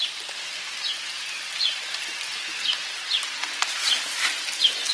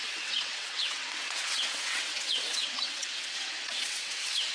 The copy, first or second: second